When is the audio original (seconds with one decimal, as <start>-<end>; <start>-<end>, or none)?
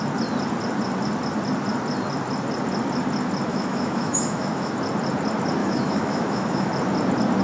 0.0-3.5; 4.7-5.6; 6.7-7.4